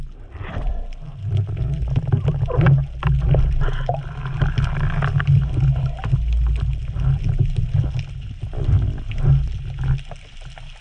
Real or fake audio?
real